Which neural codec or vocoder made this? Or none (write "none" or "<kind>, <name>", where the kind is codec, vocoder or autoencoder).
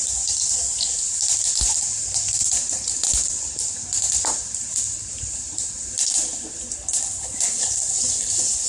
none